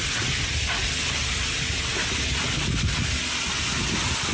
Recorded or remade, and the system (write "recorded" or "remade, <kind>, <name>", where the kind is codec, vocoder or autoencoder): recorded